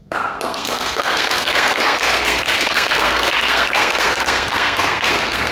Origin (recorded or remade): remade